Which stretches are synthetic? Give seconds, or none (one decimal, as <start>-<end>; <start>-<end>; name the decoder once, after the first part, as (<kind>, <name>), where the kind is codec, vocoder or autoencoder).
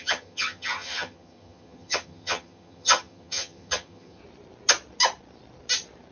0.0-4.2 (vocoder, HiFi-GAN)